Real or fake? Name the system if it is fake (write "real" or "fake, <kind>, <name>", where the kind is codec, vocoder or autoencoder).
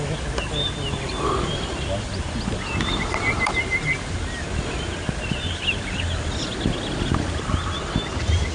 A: real